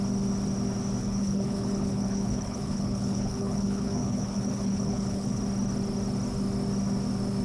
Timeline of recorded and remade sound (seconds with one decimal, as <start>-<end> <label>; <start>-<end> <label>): 0.0-1.0 recorded; 1.0-5.4 remade; 5.4-7.4 recorded